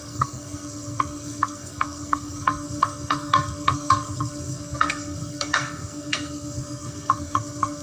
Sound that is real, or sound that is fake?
fake